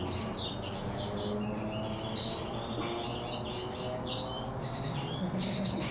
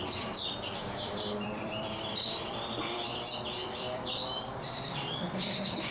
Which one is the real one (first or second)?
first